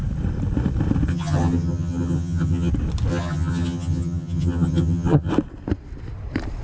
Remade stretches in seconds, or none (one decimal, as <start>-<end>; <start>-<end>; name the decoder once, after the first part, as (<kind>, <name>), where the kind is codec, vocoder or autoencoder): 1.1-2.7 (vocoder, HiFi-GAN); 3.1-5.3